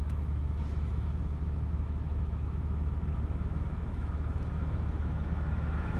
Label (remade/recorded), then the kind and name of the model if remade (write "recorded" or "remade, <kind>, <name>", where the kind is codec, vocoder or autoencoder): remade, autoencoder, DAC-VAE